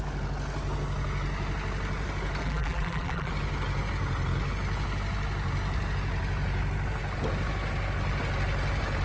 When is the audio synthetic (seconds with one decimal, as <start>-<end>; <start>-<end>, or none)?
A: 2.4-3.3